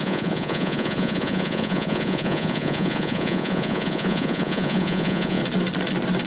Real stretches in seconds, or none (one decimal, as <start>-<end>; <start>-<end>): 5.4-6.3